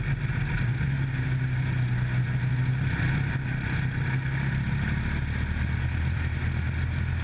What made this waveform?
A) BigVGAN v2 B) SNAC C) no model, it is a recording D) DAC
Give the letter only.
C